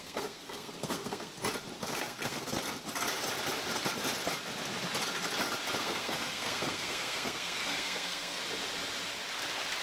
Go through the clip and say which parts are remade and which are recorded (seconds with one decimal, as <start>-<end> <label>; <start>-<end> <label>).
0.0-1.3 remade; 1.3-1.8 recorded; 1.8-2.5 remade; 2.5-5.8 recorded; 5.8-8.4 remade; 8.4-9.8 recorded